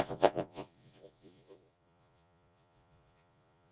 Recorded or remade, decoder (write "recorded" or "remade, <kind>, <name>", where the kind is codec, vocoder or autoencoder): remade, vocoder, Vocos